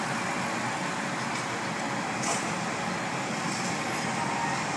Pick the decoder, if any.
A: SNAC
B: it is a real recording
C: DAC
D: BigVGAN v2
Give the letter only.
D